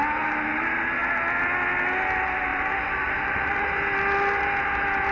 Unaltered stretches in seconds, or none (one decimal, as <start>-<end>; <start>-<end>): 0.0-2.5; 3.6-5.1